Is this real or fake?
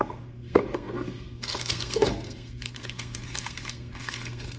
fake